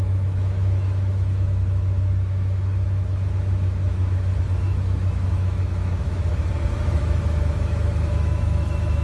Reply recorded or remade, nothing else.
remade